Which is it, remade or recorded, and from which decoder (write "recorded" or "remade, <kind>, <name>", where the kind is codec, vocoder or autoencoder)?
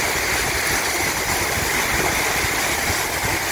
recorded